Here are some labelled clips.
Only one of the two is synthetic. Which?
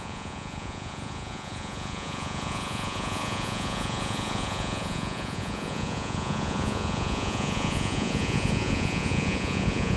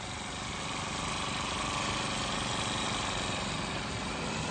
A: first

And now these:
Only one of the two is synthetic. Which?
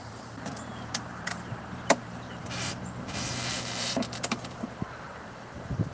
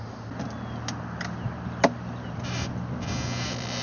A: first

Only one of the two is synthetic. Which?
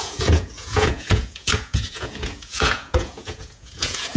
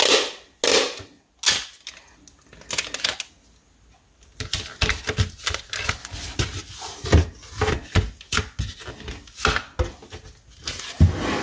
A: first